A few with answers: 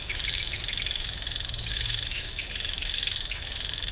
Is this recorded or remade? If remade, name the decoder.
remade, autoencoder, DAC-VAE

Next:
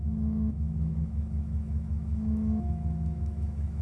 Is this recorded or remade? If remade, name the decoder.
remade, autoencoder, DAC-VAE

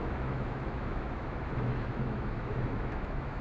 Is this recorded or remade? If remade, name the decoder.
remade, autoencoder, DAC-VAE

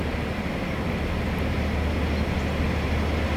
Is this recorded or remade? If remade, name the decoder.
recorded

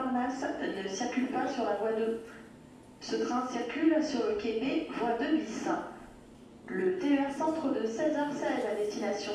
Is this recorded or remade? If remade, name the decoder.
recorded